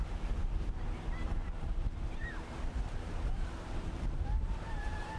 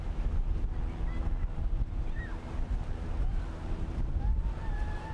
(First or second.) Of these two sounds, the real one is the second